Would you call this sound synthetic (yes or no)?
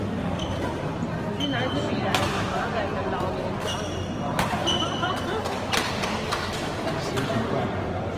no